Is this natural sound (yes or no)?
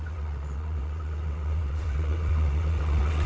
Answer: no